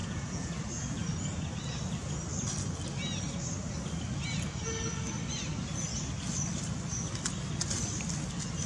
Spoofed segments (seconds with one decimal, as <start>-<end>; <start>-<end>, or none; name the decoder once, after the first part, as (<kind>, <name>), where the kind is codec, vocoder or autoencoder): 0.0-0.5 (vocoder, Vocos)